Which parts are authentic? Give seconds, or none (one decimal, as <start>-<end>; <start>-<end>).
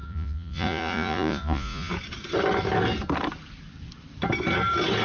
1.9-5.0